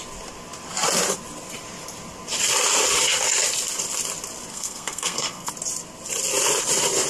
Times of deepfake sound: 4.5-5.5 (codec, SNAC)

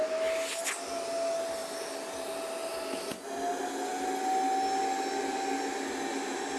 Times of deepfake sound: none